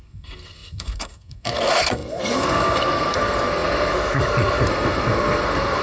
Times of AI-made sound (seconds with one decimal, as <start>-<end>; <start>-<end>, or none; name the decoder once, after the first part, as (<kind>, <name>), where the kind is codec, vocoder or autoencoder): 0.0-5.8 (codec, SNAC)